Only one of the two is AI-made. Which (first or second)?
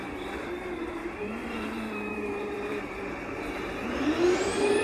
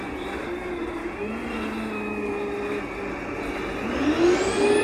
first